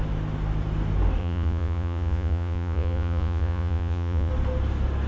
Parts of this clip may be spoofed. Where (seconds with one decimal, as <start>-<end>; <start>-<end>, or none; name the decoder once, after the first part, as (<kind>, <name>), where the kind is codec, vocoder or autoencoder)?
1.2-4.3 (vocoder, Vocos)